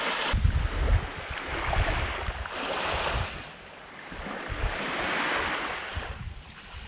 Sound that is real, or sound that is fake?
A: real